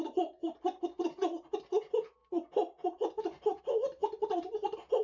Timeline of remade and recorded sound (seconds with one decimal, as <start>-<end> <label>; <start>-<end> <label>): 0.0-5.0 recorded